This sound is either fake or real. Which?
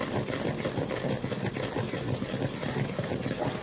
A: real